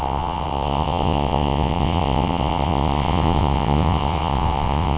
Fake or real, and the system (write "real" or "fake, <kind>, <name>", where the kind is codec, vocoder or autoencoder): fake, vocoder, WaveNeXt